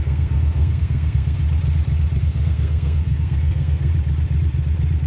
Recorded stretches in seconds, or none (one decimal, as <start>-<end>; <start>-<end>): 1.4-2.2; 3.9-5.1